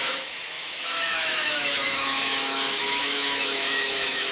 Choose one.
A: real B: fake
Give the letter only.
B